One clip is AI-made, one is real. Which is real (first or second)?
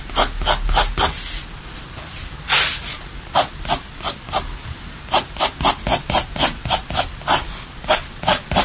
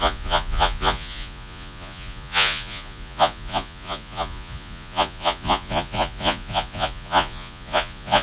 first